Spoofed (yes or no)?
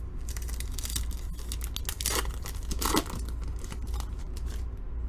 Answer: no